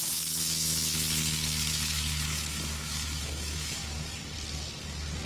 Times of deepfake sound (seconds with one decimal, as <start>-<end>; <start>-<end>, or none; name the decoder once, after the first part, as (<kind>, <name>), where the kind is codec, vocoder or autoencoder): 0.0-3.8 (autoencoder, DAC-VAE)